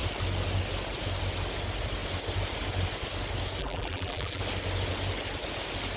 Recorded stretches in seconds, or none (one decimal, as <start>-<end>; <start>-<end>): 0.0-3.6; 4.4-6.0